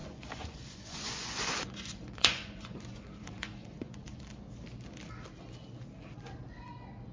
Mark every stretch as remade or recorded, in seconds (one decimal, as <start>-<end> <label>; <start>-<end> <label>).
0.0-4.2 remade; 4.2-7.1 recorded

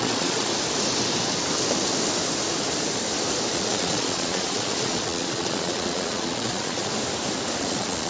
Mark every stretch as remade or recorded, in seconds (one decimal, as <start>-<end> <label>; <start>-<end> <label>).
0.0-0.5 remade; 0.5-3.5 recorded; 3.5-6.9 remade; 6.9-7.6 recorded; 7.6-8.1 remade